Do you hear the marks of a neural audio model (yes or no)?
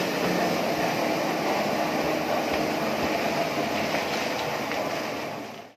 no